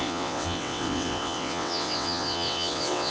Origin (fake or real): fake